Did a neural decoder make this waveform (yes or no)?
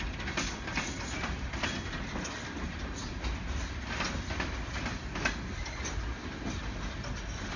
no